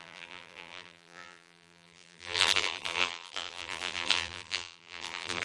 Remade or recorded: remade